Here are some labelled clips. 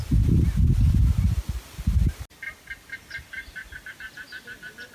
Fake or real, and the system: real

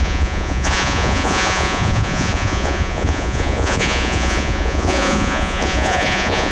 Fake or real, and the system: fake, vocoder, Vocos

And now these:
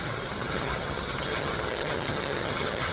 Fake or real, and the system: fake, vocoder, HiFi-GAN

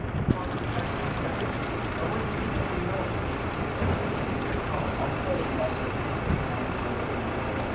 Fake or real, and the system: real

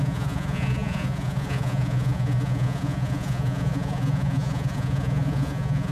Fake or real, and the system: fake, vocoder, Vocos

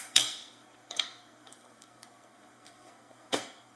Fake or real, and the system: fake, codec, SNAC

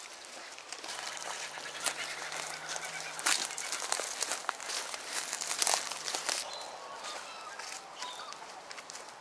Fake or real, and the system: real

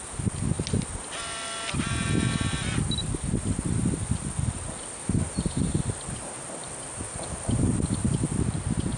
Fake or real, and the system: real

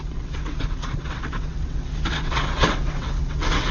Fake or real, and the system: fake, vocoder, WaveNeXt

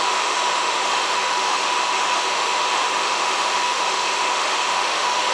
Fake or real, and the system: fake, autoencoder, DAC-VAE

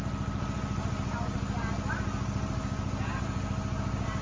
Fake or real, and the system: real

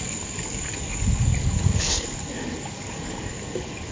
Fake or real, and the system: fake, codec, DAC